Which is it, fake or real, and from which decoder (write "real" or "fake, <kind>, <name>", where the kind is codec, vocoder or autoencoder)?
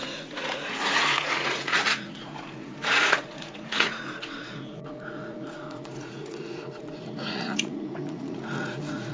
fake, vocoder, Vocos